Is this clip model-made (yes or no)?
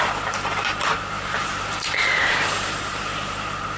yes